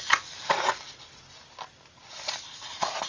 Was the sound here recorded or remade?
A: recorded